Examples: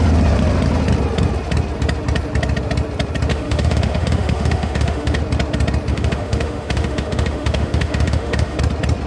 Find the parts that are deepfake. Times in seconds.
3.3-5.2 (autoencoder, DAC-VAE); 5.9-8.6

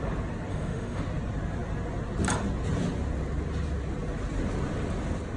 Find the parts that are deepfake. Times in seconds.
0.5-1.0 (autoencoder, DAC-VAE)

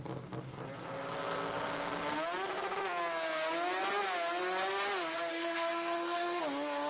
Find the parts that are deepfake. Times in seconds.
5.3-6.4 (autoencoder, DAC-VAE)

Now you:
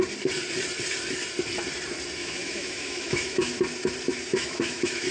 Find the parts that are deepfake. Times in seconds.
2.2-3.6 (autoencoder, DAC-VAE); 4.3-5.1